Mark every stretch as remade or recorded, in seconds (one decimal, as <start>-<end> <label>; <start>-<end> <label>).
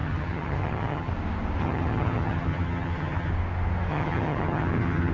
0.0-1.1 remade; 1.1-1.6 recorded; 1.6-3.3 remade; 3.3-3.9 recorded; 3.9-5.1 remade